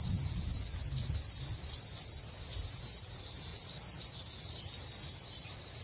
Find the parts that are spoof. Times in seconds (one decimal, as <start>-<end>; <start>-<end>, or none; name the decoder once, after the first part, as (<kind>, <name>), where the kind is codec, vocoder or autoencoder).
none